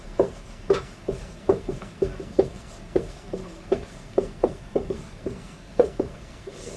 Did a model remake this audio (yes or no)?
yes